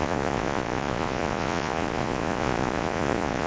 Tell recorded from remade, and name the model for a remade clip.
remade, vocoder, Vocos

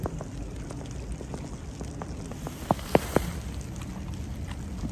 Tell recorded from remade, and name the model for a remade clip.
recorded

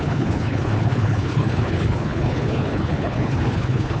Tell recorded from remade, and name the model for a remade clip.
remade, codec, HILCodec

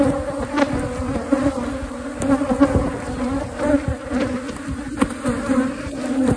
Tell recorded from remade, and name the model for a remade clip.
recorded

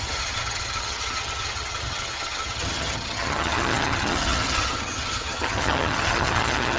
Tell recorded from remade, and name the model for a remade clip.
remade, vocoder, HiFi-GAN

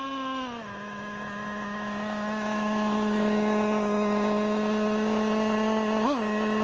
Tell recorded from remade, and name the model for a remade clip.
remade, autoencoder, DAC-VAE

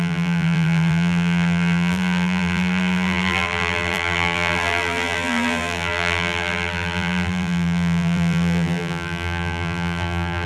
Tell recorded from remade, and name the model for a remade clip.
remade, vocoder, BigVGAN v2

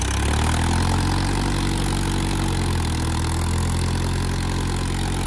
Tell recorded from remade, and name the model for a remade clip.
recorded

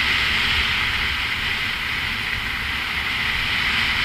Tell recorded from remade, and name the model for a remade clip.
recorded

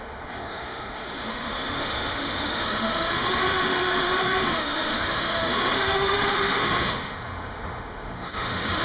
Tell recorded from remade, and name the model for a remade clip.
remade, autoencoder, DAC-VAE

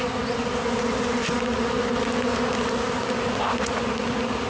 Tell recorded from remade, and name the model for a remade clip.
recorded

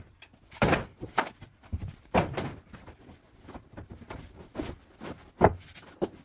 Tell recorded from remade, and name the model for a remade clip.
recorded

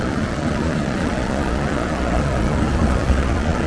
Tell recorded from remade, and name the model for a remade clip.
remade, vocoder, Vocos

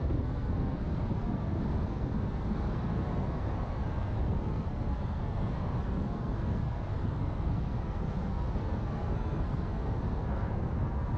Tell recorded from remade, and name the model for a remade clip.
remade, codec, SNAC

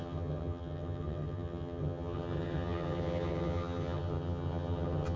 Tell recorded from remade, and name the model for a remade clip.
remade, vocoder, HiFi-GAN